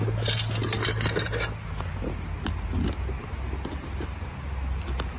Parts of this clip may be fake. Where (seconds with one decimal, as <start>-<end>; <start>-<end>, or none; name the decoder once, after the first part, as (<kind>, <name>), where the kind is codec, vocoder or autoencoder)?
none